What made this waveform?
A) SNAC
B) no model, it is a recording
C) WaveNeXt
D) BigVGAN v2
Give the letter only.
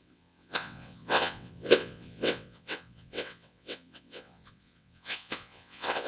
C